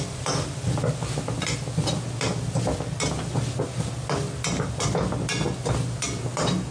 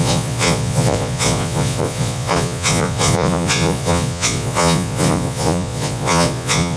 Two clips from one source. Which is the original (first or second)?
first